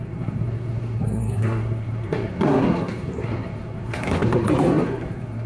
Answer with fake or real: fake